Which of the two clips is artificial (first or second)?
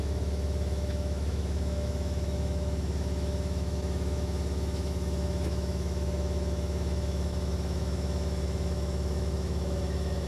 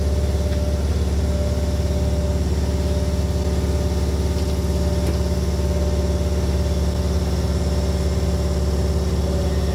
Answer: first